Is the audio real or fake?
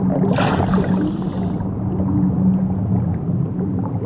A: real